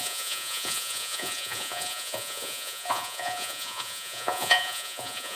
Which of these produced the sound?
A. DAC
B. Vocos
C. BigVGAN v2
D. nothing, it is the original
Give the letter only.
B